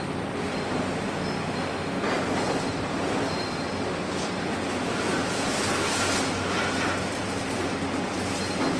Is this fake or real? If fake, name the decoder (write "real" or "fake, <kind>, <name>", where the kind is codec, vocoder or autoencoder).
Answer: real